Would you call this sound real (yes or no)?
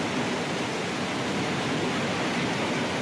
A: yes